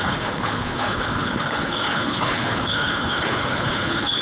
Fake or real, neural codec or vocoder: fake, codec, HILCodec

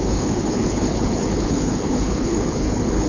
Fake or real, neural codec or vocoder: fake, codec, HILCodec